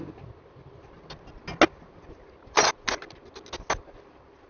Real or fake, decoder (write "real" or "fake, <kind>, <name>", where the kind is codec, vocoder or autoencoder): real